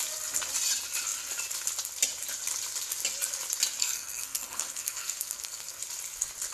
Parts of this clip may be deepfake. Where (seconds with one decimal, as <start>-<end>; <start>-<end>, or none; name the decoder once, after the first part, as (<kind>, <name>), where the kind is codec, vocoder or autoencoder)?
3.8-5.8 (codec, SNAC)